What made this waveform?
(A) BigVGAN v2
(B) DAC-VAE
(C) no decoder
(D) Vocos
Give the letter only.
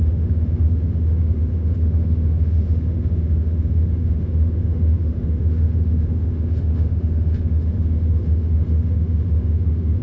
B